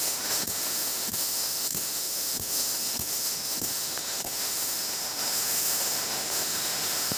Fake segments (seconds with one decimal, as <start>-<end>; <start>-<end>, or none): 0.0-7.2